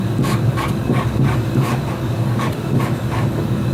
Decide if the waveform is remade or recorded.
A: remade